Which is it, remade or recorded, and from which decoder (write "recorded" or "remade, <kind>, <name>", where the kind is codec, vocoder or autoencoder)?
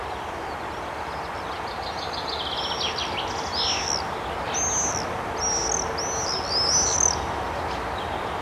recorded